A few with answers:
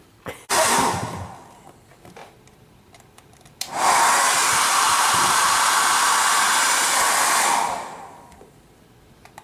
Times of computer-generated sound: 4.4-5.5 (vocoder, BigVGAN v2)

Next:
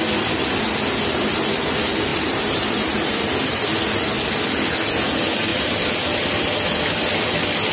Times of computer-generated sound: 2.1-3.6 (vocoder, BigVGAN v2); 5.5-6.3

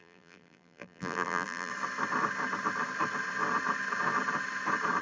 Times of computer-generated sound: 0.0-1.7 (vocoder, BigVGAN v2)